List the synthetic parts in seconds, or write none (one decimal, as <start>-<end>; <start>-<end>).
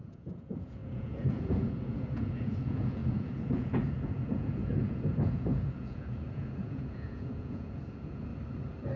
0.0-8.3